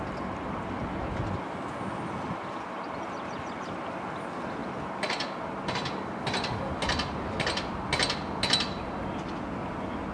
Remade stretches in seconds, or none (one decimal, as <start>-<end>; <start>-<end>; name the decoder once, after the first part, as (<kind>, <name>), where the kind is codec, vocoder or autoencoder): none